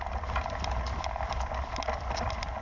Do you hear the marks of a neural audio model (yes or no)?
no